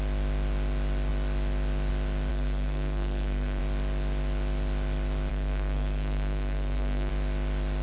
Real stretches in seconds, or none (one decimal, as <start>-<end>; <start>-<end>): 0.0-2.3; 3.6-5.3; 7.1-7.8